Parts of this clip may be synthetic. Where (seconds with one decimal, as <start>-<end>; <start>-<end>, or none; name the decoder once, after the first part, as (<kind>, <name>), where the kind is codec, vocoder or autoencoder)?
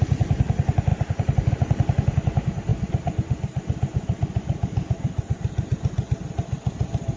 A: none